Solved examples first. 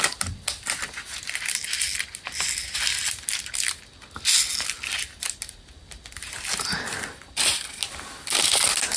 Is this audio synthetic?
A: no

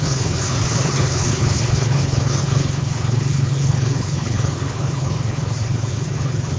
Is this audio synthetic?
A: yes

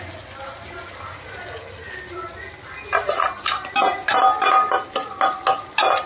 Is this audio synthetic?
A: no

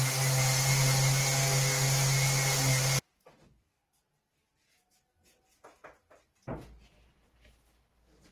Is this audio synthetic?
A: no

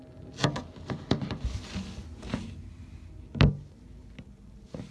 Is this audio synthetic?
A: no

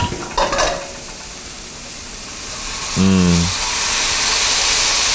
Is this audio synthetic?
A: no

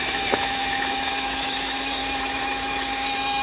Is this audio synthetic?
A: yes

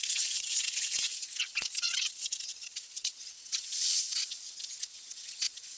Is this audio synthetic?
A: yes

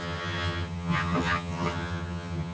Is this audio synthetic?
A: yes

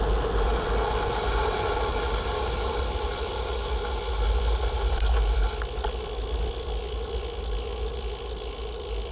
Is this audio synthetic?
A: no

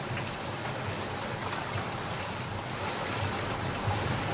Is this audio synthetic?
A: yes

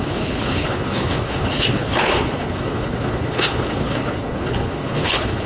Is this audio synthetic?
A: yes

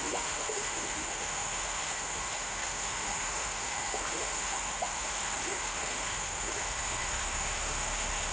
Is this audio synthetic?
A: yes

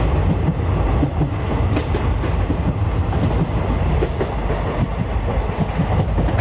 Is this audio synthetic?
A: no